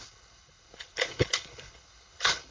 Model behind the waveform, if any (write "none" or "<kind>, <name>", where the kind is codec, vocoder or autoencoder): codec, HILCodec